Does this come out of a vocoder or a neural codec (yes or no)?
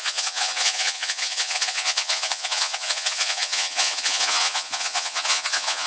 yes